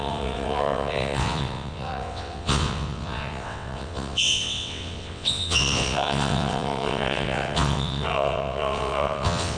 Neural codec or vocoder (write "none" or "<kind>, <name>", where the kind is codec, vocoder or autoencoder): vocoder, WaveNeXt